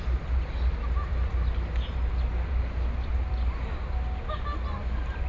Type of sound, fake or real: real